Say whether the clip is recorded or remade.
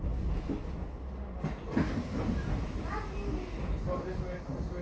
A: recorded